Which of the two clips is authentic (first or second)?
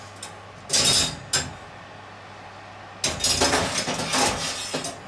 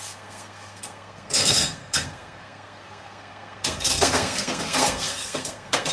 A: first